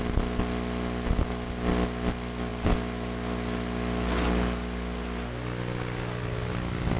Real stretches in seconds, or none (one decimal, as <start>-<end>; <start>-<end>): 0.0-7.0